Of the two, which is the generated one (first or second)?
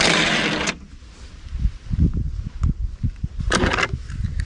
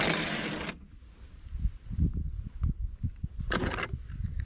second